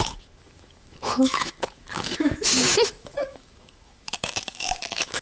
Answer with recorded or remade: remade